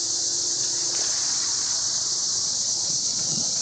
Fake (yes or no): yes